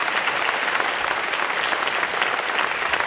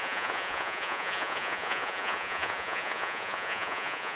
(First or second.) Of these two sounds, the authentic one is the first